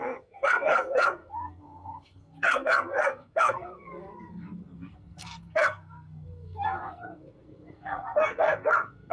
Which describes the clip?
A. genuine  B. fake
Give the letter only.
B